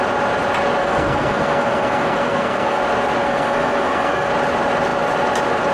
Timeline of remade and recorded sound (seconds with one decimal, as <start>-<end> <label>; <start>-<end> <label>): 0.0-0.8 recorded; 0.8-2.8 remade; 2.8-3.2 recorded; 3.2-4.3 remade; 4.3-5.7 recorded